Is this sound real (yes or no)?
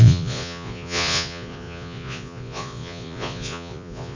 no